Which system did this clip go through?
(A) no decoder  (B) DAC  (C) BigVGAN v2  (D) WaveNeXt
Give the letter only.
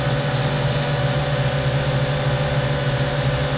A